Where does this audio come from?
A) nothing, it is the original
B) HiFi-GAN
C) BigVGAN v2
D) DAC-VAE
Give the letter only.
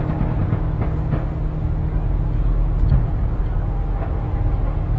A